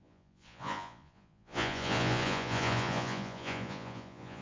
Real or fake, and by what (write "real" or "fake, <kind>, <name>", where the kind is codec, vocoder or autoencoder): fake, vocoder, Vocos